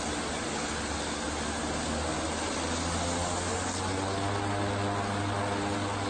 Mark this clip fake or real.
real